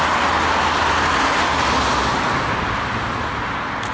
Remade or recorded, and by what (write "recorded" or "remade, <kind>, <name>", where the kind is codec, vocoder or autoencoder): recorded